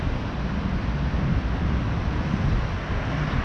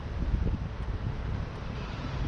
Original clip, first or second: first